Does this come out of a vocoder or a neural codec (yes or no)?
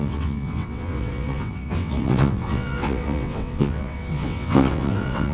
yes